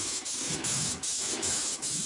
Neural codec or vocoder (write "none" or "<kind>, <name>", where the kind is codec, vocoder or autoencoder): autoencoder, DAC-VAE